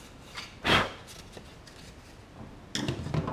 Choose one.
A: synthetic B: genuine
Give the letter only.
B